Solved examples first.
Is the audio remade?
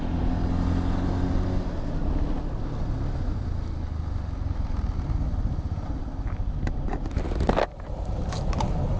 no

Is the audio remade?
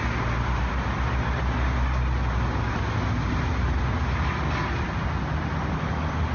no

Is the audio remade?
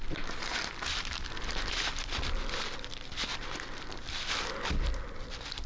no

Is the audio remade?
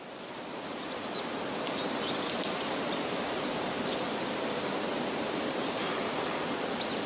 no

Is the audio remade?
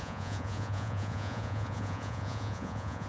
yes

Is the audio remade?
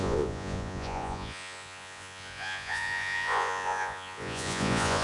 yes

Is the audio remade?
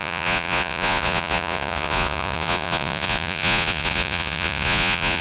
yes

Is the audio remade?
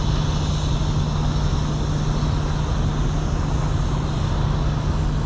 no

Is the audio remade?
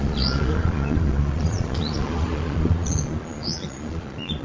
yes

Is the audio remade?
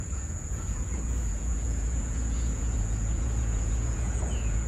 yes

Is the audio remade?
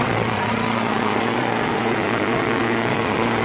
yes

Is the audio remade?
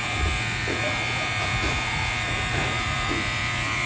yes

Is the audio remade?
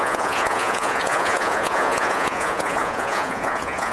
yes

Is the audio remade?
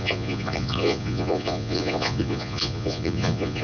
yes